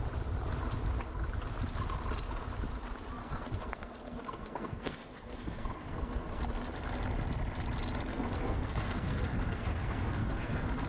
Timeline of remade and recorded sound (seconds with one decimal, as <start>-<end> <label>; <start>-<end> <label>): 0.0-3.2 recorded; 3.2-6.4 remade; 6.4-8.1 recorded; 8.1-10.9 remade